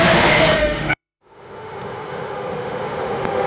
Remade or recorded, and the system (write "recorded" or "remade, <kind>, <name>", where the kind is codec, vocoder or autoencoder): remade, autoencoder, DAC-VAE